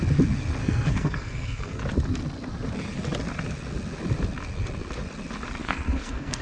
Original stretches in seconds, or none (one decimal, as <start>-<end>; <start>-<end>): 0.0-0.6; 1.8-5.6